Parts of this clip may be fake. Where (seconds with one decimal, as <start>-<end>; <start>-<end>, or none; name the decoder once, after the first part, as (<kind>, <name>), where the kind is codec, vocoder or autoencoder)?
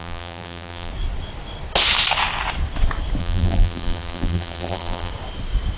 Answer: 0.0-0.9 (vocoder, BigVGAN v2); 3.2-5.1